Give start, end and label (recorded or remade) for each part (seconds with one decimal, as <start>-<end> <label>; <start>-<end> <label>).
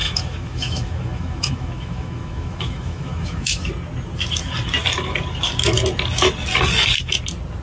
0.0-3.6 remade; 3.6-7.6 recorded